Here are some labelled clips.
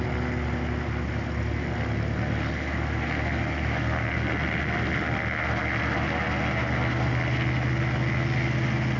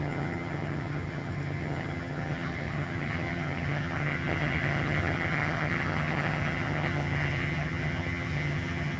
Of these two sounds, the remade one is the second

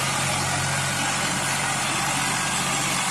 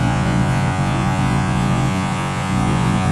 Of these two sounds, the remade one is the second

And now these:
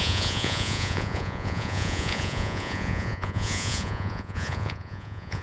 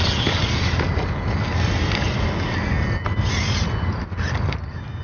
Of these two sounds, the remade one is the first